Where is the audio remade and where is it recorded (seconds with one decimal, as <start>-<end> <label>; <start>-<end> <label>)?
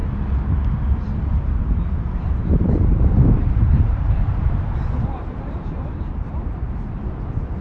0.0-2.4 recorded; 2.4-7.0 remade; 7.0-7.6 recorded